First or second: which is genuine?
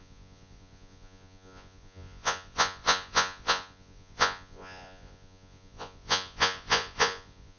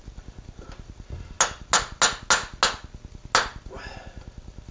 second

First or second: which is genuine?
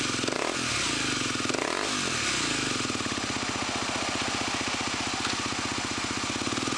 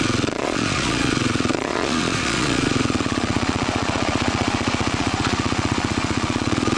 first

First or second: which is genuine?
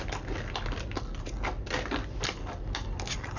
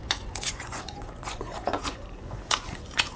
first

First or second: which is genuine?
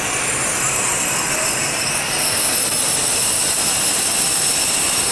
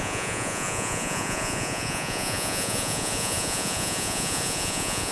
first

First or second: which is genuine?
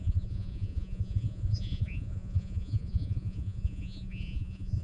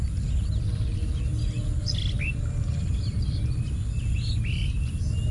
second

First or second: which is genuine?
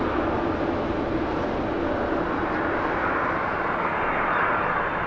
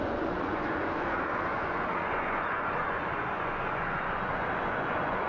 first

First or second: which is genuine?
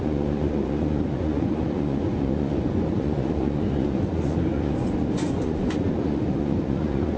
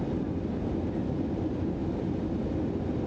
second